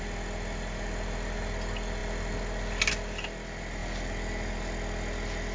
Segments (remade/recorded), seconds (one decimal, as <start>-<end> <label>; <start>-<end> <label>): 0.0-5.5 recorded